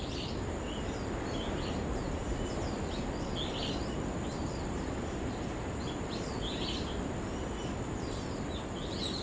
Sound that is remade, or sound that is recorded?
recorded